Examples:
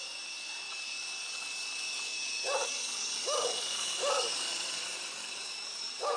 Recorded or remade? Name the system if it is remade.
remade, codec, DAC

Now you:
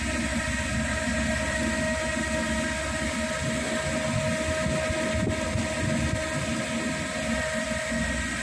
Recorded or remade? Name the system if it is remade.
recorded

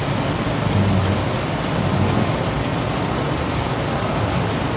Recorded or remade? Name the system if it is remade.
recorded